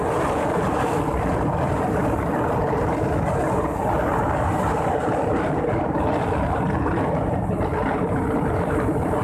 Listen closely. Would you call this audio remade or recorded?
recorded